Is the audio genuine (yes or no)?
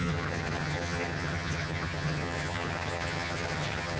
no